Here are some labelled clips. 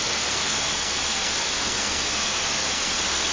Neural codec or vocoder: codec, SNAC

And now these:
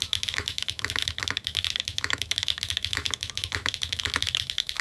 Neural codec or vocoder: autoencoder, DAC-VAE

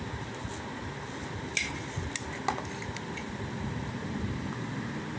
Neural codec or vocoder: none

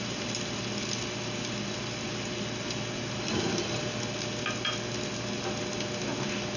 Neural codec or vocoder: none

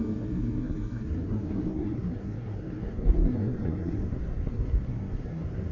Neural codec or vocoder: codec, SNAC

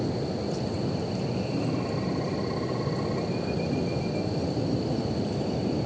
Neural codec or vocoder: none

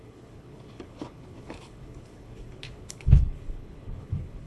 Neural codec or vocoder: codec, HILCodec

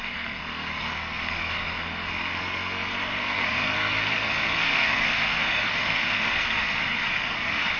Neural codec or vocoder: codec, SNAC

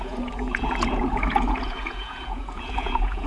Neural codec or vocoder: vocoder, Vocos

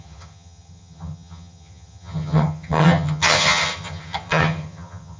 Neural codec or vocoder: vocoder, HiFi-GAN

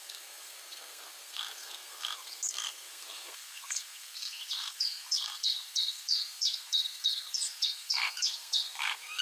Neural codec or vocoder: codec, SNAC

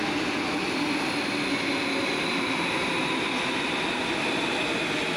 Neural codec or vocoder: none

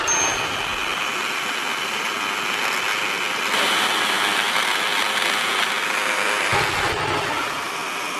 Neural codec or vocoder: none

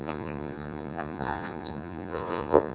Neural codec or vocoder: vocoder, Vocos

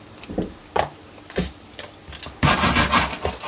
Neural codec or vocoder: none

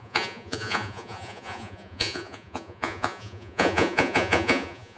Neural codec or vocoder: vocoder, Vocos